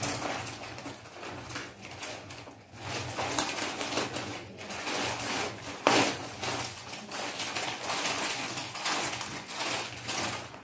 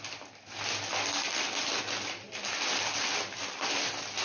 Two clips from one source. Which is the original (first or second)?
second